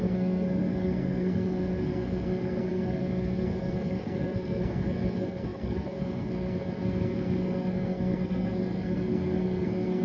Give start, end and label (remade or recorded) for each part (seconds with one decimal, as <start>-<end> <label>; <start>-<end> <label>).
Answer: 0.0-10.0 remade